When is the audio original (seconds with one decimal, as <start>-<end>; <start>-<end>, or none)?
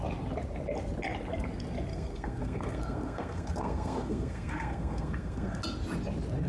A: 0.0-1.9; 5.6-6.5